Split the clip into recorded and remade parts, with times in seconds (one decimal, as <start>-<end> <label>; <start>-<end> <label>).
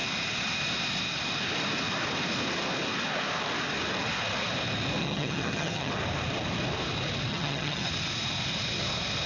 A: 0.0-5.0 recorded; 5.0-5.9 remade; 5.9-7.3 recorded; 7.3-7.9 remade; 7.9-9.3 recorded